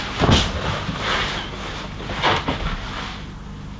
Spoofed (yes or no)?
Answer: no